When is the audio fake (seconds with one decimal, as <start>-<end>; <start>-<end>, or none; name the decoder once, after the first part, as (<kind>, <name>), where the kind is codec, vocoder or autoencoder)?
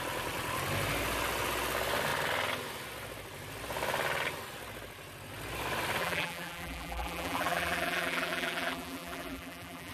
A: 6.0-9.9 (vocoder, BigVGAN v2)